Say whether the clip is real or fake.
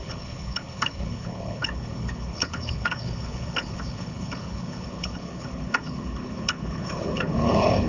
fake